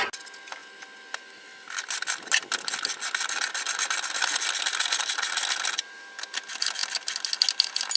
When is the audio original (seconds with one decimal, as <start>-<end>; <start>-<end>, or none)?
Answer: 0.0-8.0